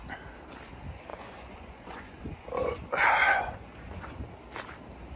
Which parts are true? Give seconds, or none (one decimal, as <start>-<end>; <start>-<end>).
0.0-1.1; 4.2-5.2